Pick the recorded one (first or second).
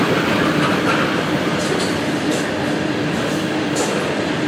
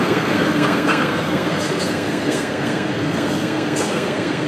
first